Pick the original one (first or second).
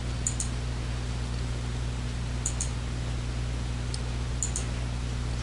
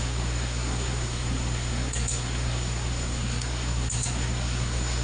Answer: first